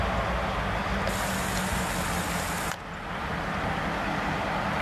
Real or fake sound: real